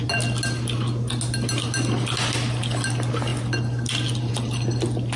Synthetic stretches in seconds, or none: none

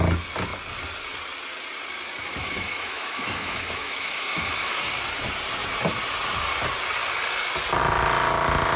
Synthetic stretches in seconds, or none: 2.4-4.8

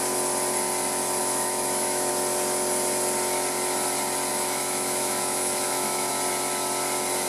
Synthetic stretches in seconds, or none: 1.2-2.1; 4.3-6.1

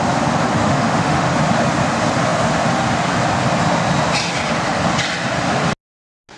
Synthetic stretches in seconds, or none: 0.6-1.3

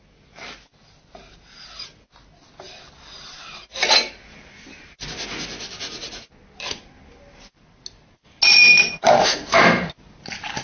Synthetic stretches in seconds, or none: 9.2-9.9

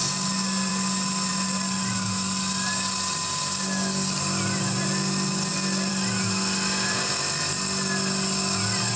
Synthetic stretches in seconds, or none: none

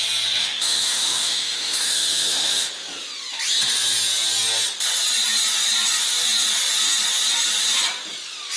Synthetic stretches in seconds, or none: 0.4-2.7

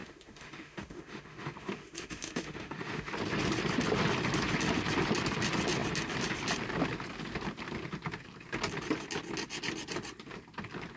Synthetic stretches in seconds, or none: 0.0-3.1